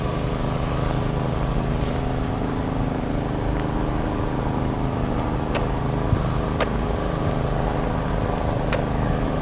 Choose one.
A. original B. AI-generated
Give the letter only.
A